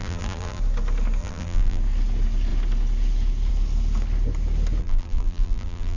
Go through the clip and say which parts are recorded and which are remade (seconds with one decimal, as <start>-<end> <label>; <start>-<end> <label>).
0.0-0.6 remade; 0.6-1.2 recorded; 1.2-1.8 remade; 1.8-4.8 recorded; 4.8-6.0 remade